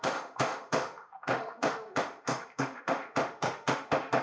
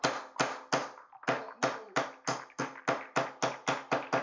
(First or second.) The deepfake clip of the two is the first